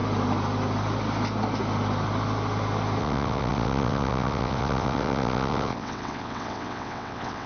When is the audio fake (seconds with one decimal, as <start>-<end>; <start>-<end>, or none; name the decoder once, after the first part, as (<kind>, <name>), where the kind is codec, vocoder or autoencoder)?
3.0-7.5 (vocoder, WaveNeXt)